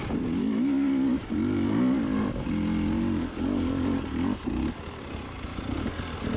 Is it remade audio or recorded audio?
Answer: recorded